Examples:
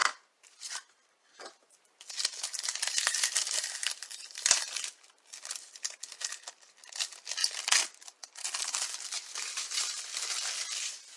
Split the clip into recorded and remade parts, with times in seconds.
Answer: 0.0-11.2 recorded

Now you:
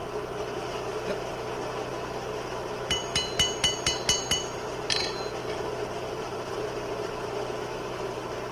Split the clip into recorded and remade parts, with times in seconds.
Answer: 0.0-5.4 recorded; 5.4-7.3 remade; 7.3-8.5 recorded

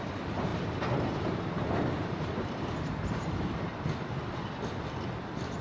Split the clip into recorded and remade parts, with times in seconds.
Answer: 0.0-3.7 remade; 3.7-5.6 recorded

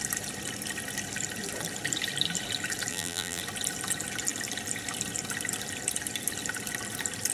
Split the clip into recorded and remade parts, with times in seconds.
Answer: 0.0-2.9 recorded; 2.9-3.4 remade; 3.4-7.3 recorded

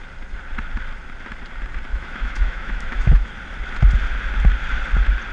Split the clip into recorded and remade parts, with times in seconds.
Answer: 0.0-1.9 recorded; 1.9-3.3 remade; 3.3-5.3 recorded

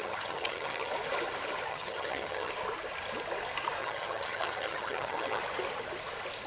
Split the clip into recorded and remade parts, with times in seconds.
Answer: 0.0-0.9 remade; 0.9-1.7 recorded; 1.7-2.5 remade; 2.5-3.8 recorded; 3.8-5.4 remade; 5.4-6.5 recorded